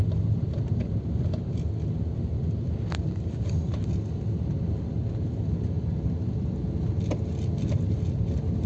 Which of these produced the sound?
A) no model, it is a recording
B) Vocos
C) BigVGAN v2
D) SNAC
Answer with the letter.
A